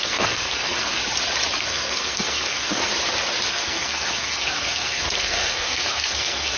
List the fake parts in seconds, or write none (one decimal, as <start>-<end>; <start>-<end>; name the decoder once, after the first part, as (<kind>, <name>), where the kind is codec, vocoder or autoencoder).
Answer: 0.0-1.0 (codec, SNAC); 1.6-2.9; 3.5-6.6